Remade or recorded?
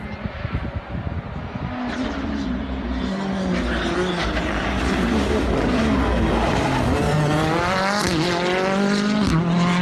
recorded